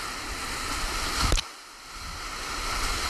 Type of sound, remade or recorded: recorded